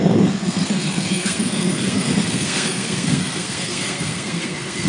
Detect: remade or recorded remade